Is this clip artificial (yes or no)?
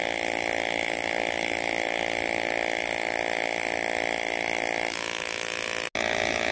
no